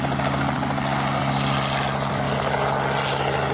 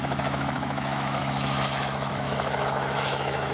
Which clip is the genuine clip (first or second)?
first